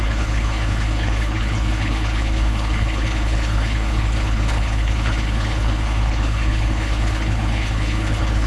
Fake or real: fake